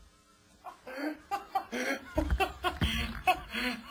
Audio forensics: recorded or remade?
recorded